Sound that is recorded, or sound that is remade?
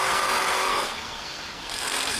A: remade